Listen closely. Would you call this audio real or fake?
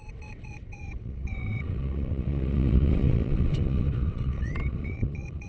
fake